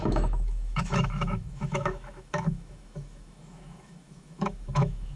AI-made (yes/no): yes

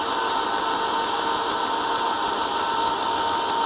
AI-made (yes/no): no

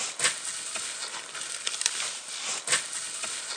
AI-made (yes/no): no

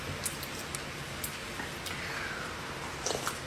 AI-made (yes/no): no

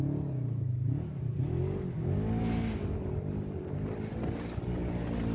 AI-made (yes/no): no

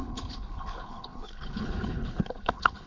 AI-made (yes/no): yes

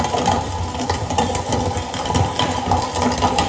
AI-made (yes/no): yes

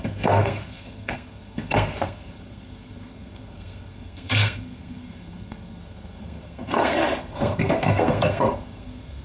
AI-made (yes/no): yes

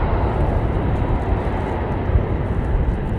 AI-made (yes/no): no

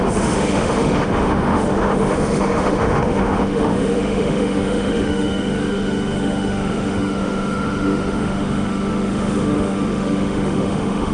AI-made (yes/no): yes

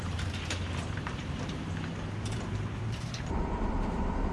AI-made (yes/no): yes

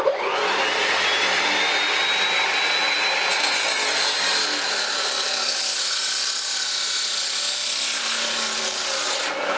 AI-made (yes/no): no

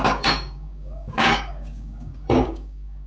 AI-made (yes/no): yes